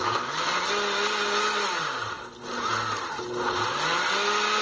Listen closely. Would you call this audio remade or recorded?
recorded